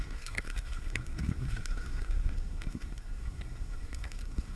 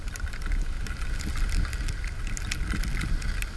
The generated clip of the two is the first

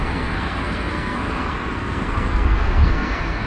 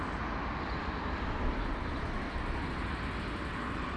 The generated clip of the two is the first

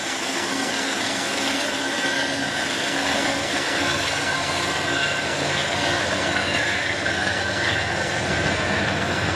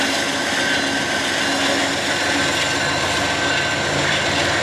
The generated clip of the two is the first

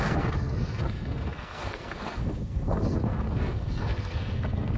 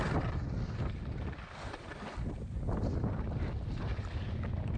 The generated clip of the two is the first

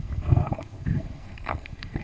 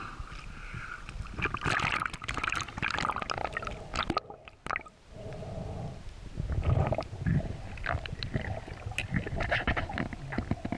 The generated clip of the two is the first